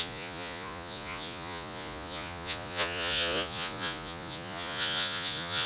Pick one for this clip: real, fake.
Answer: fake